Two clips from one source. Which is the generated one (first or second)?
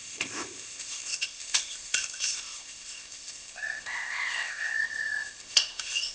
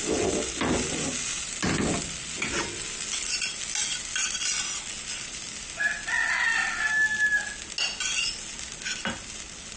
first